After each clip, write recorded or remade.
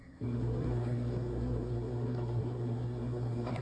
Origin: remade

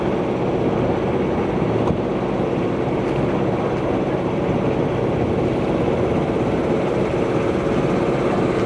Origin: recorded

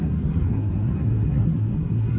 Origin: remade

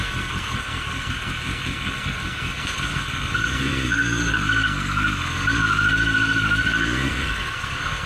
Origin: remade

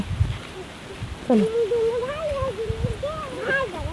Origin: recorded